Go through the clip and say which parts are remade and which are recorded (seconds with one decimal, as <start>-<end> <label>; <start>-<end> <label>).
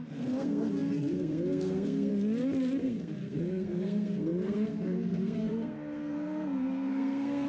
0.0-2.1 remade; 2.1-2.8 recorded; 2.8-7.5 remade